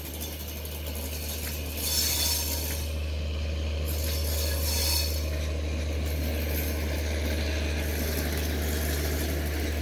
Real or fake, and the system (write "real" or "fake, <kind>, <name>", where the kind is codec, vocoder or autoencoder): real